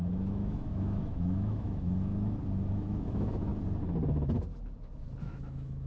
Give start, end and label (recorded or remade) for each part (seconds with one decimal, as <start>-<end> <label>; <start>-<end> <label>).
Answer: 0.0-2.1 remade; 2.1-2.7 recorded; 2.7-3.5 remade; 3.5-5.2 recorded; 5.2-5.9 remade